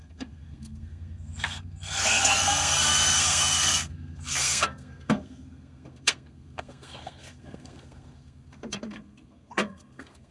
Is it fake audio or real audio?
fake